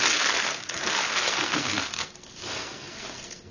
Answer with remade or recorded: remade